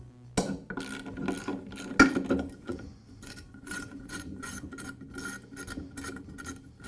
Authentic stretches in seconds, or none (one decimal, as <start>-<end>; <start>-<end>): 0.0-2.6; 4.7-6.9